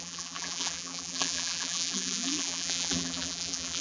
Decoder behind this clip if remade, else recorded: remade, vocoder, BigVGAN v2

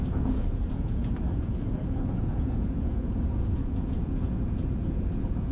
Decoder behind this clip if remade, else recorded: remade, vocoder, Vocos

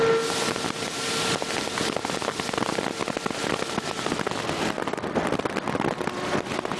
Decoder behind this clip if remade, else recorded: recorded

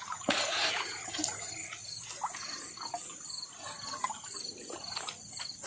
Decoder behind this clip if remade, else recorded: recorded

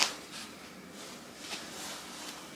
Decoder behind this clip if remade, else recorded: recorded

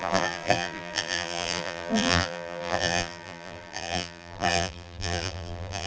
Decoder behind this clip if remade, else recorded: remade, vocoder, BigVGAN v2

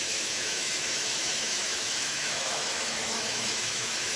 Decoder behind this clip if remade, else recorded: remade, autoencoder, DAC-VAE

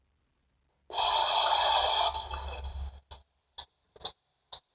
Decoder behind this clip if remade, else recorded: recorded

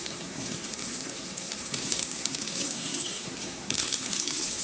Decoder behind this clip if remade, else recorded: remade, codec, SNAC